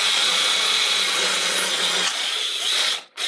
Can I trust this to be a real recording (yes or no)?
no